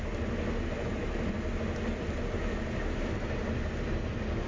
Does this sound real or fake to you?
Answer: real